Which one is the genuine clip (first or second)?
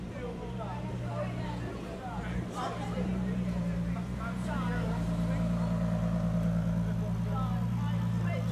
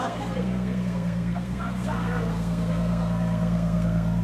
first